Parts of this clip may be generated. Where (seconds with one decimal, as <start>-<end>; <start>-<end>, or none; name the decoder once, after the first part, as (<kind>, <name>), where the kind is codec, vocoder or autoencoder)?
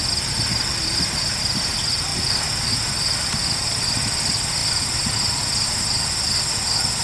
2.1-2.7 (vocoder, BigVGAN v2)